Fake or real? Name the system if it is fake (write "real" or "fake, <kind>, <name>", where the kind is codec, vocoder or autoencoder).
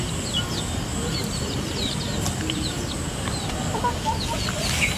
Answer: real